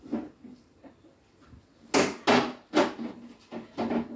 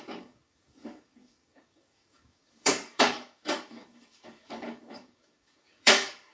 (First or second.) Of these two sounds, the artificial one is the second